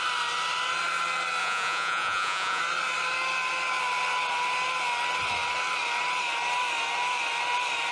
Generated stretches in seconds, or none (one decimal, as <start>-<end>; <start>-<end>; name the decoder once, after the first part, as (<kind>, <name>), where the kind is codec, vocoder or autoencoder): 1.4-2.6 (vocoder, Vocos)